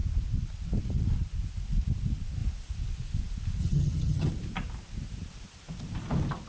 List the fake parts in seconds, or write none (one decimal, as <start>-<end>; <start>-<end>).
3.6-4.3